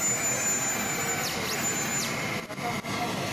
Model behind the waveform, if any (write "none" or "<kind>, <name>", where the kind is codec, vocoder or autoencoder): none